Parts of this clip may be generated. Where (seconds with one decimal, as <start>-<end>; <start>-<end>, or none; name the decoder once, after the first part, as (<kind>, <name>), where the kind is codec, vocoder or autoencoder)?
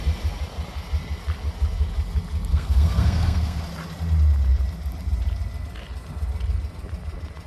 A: 2.5-3.6 (codec, SNAC)